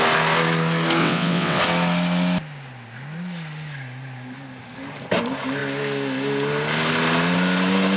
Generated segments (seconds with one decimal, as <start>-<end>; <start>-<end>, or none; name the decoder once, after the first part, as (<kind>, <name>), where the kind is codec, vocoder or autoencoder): 1.0-1.6 (vocoder, WaveNeXt)